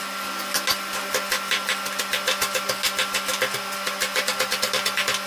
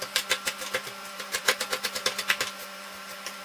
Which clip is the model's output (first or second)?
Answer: second